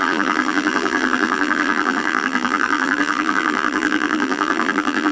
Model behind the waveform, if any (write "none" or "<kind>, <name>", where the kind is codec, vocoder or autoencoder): vocoder, BigVGAN v2